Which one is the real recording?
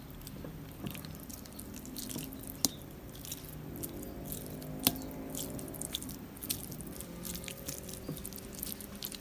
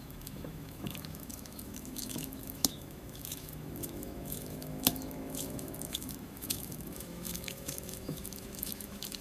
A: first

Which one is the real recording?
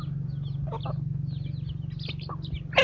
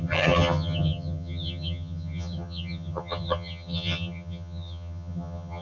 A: first